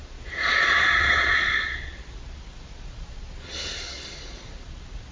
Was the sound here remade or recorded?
remade